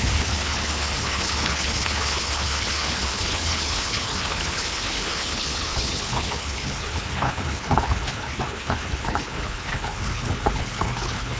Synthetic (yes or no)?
yes